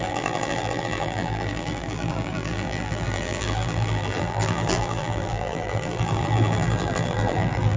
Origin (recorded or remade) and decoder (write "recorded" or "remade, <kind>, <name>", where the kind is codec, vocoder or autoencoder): remade, vocoder, BigVGAN v2